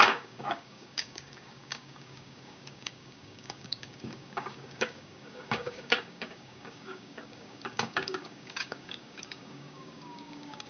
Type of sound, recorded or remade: remade